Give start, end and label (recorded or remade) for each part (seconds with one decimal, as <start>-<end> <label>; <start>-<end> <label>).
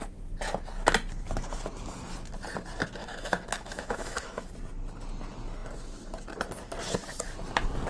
0.0-3.0 recorded; 3.0-4.5 remade; 4.5-7.9 recorded